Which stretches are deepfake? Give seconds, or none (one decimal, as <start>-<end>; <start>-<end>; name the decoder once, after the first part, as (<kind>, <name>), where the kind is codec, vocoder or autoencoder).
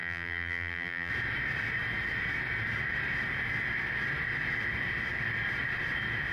0.0-1.1 (vocoder, BigVGAN v2)